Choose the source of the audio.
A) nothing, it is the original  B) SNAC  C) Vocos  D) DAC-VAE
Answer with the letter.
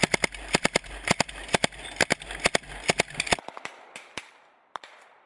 A